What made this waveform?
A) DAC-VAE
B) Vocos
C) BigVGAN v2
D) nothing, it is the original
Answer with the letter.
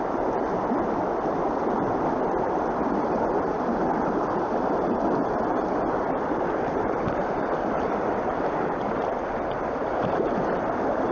D